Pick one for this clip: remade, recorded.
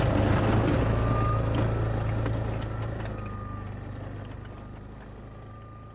recorded